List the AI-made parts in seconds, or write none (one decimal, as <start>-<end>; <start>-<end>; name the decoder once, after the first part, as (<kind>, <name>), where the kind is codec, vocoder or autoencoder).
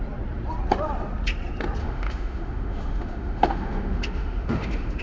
1.8-5.0 (autoencoder, DAC-VAE)